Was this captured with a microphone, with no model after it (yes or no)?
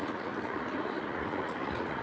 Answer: no